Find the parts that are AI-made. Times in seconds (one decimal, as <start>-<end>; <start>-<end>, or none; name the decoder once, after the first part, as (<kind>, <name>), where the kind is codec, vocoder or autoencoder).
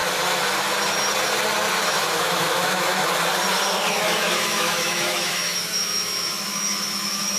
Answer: 1.7-3.0 (autoencoder, DAC-VAE); 3.9-7.4